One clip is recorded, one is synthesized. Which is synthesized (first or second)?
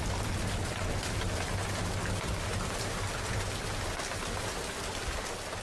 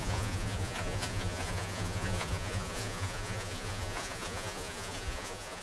second